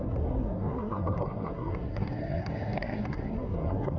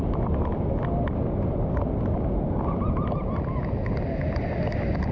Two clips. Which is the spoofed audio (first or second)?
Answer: first